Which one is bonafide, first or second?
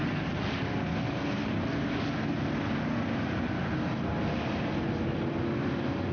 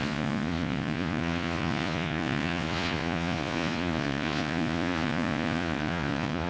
first